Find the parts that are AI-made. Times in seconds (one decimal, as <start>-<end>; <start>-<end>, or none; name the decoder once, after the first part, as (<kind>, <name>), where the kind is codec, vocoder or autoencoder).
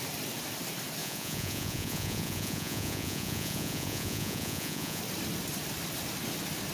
1.0-5.0 (vocoder, Vocos)